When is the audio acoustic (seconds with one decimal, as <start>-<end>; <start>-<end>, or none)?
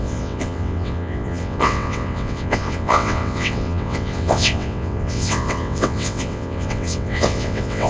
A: none